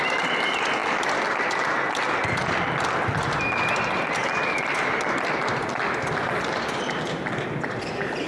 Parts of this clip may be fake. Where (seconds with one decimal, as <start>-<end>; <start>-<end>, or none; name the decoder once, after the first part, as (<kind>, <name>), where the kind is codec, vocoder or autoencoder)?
none